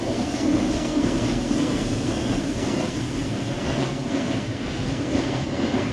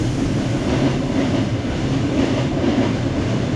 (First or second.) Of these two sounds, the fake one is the first